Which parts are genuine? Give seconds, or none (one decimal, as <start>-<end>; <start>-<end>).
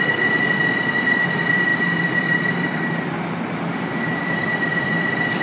none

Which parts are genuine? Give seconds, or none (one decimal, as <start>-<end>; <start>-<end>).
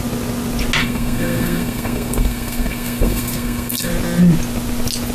0.0-0.8; 3.9-5.1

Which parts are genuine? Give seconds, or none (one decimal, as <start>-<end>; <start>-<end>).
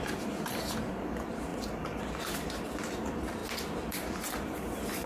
3.4-3.9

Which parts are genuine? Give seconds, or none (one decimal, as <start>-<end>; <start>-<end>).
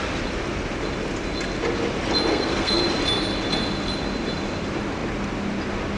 0.0-2.3; 2.8-6.0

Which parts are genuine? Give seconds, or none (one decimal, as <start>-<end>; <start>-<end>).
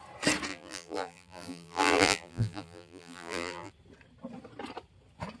0.0-0.5; 3.7-5.4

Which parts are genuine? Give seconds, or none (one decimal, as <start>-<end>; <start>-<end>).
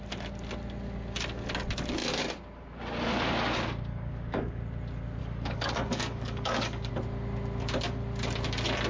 0.0-3.9; 4.6-5.2; 6.9-8.9